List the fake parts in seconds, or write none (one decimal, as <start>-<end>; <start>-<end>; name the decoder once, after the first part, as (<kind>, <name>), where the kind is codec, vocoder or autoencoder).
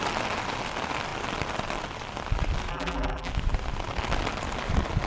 2.7-3.3 (vocoder, BigVGAN v2)